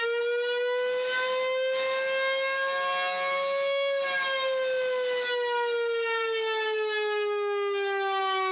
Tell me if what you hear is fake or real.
real